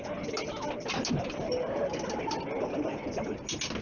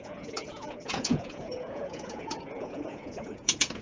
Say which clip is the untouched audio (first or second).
first